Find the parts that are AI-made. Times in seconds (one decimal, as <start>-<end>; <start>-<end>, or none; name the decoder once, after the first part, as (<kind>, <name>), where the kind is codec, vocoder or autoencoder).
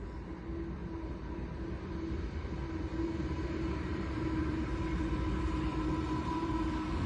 0.8-5.1 (vocoder, BigVGAN v2); 5.7-6.5